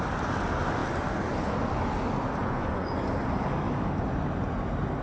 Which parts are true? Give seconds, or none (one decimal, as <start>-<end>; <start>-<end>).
0.0-2.4; 3.1-5.0